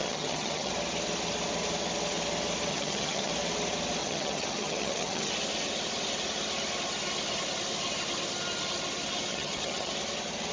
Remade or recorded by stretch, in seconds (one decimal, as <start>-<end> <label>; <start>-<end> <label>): 0.0-0.7 remade; 0.7-2.7 recorded; 2.7-3.3 remade; 3.3-4.0 recorded; 4.0-5.3 remade; 5.3-9.3 recorded; 9.3-9.9 remade; 9.9-10.5 recorded

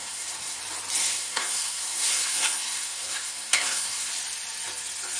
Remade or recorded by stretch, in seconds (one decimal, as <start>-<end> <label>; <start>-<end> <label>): 0.0-0.6 remade; 0.6-1.0 recorded; 1.0-4.1 remade; 4.1-5.2 recorded

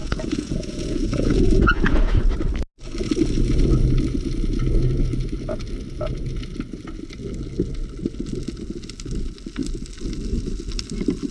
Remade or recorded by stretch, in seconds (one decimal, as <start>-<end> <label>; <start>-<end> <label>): 0.0-2.3 remade; 2.3-11.3 recorded

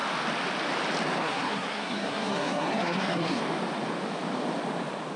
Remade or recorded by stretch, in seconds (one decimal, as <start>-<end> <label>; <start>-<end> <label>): 0.0-1.2 recorded; 1.2-3.4 remade; 3.4-5.2 recorded